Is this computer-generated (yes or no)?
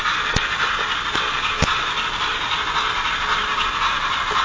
no